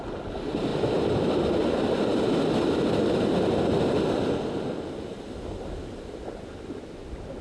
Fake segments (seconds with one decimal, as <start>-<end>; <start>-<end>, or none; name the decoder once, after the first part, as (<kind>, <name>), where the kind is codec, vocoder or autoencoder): none